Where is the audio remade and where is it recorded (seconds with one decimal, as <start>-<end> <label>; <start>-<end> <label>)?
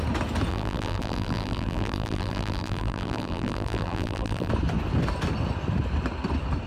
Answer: 0.0-0.5 recorded; 0.5-4.5 remade; 4.5-6.7 recorded